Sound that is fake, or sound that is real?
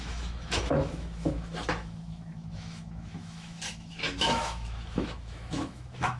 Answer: fake